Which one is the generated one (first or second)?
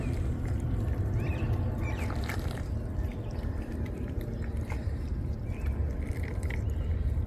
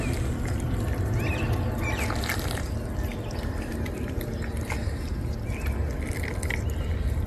first